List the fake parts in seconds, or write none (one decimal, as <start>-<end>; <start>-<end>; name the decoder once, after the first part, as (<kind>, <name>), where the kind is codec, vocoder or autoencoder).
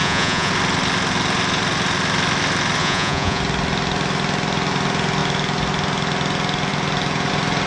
0.0-0.5 (vocoder, Vocos); 2.8-3.4